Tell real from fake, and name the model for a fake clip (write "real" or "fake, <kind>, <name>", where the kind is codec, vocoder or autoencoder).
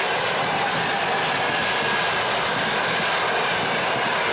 real